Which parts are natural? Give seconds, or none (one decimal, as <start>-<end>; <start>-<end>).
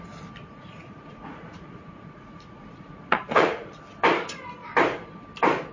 0.0-0.4; 3.8-5.7